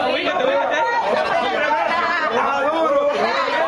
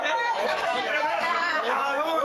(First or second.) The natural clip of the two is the first